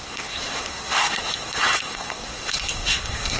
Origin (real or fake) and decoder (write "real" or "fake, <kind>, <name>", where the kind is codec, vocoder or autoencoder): fake, codec, SNAC